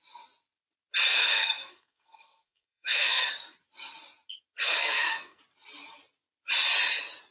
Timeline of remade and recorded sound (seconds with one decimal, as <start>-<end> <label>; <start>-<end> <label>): 0.0-1.1 recorded; 1.1-3.3 remade; 3.3-4.6 recorded; 4.6-5.4 remade; 5.4-7.3 recorded